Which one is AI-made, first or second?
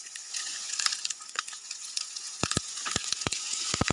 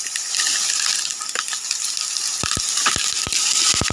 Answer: first